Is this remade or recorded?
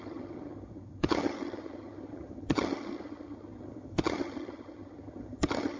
remade